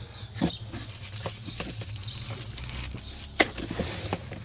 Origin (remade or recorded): recorded